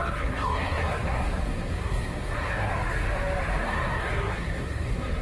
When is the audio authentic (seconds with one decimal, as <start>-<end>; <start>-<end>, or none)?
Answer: 2.7-3.6